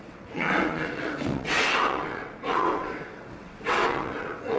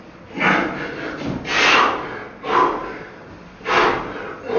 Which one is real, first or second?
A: second